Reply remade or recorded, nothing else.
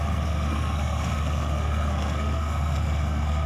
remade